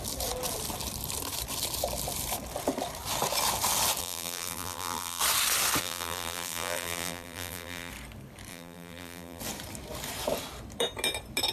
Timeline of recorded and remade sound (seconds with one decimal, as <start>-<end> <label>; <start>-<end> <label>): 0.0-4.0 recorded; 4.0-5.2 remade; 5.2-5.8 recorded; 5.8-7.9 remade; 7.9-8.5 recorded; 8.5-9.4 remade; 9.4-11.5 recorded